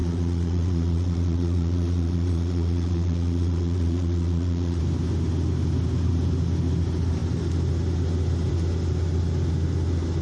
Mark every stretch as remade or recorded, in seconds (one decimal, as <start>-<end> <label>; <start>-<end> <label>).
0.0-4.8 remade; 4.8-10.2 recorded